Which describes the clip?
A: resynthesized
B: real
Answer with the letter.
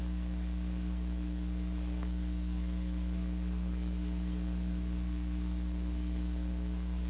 A